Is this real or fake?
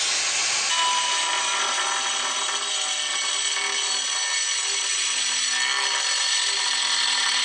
real